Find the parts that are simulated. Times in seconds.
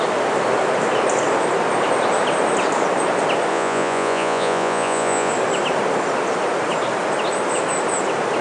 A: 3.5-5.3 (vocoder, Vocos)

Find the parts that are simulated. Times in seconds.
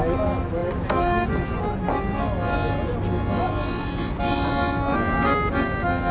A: none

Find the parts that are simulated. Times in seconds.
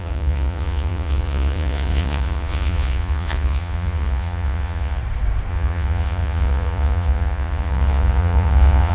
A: 0.0-5.0 (vocoder, Vocos); 5.5-8.9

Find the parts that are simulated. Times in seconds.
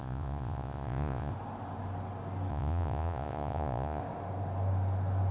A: 0.0-1.3 (vocoder, Vocos); 2.5-4.0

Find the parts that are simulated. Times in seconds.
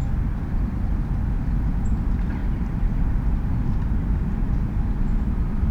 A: none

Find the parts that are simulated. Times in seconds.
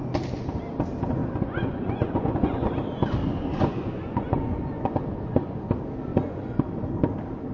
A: 1.2-2.7 (vocoder, Vocos); 3.2-5.6; 6.1-6.6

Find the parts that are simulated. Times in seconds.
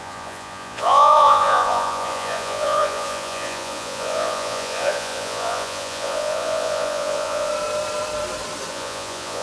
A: 0.0-7.5 (vocoder, Vocos); 8.7-9.4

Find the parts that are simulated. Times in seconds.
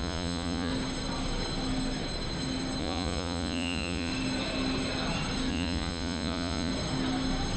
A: 0.0-0.7 (vocoder, Vocos); 2.8-4.1; 5.5-6.7